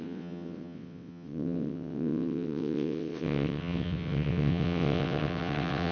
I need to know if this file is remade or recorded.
remade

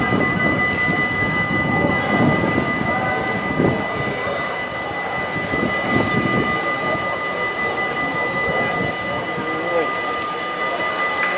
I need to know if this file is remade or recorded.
recorded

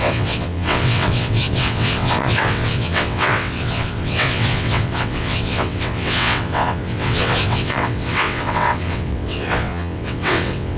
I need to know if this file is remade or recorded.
remade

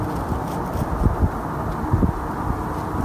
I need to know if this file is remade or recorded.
recorded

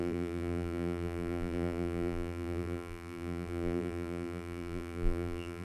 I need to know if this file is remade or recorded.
remade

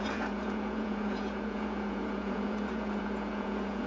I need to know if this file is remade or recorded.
remade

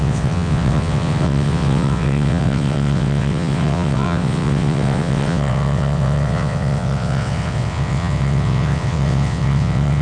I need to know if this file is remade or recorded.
remade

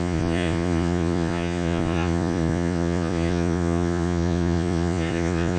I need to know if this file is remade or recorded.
remade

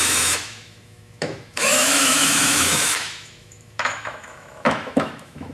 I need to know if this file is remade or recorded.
remade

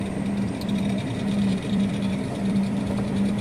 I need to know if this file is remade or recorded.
remade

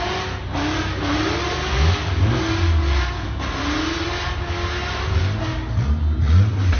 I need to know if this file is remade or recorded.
recorded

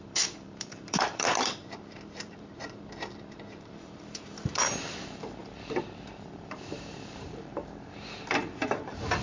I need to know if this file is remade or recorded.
remade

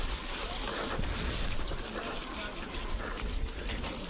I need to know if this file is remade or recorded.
recorded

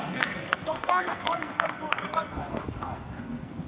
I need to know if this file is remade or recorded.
remade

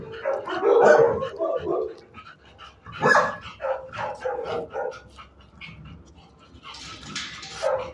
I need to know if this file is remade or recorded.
recorded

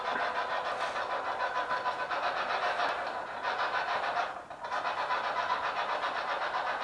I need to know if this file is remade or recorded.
recorded